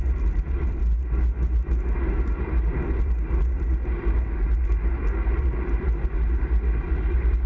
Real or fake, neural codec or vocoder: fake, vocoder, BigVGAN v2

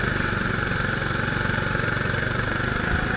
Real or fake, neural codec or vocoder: real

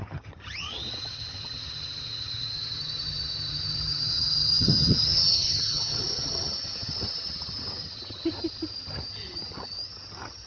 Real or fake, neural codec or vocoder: fake, vocoder, HiFi-GAN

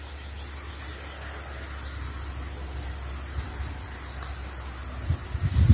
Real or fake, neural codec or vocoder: real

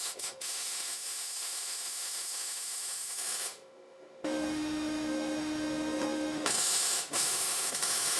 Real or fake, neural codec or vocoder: fake, autoencoder, DAC-VAE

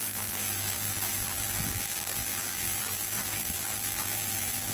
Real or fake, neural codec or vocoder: fake, vocoder, BigVGAN v2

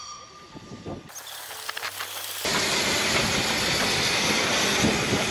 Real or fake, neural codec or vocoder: real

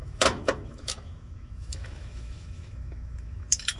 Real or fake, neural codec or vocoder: fake, autoencoder, DAC-VAE